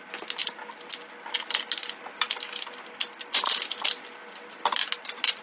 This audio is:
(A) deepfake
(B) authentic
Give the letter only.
B